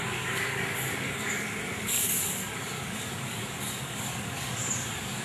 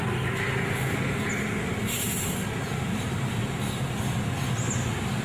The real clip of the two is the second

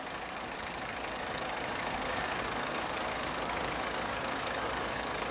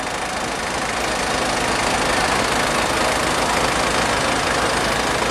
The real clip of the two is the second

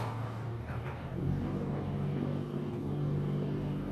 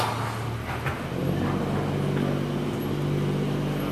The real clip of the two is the second